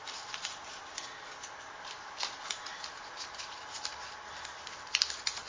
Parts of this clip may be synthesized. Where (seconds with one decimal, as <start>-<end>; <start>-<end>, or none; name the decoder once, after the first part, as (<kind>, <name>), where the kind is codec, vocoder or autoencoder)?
none